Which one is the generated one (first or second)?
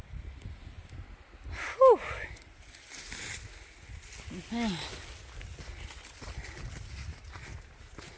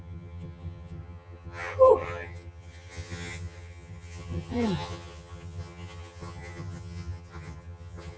second